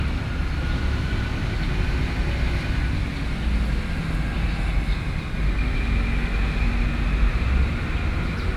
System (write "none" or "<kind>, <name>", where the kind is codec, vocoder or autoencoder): none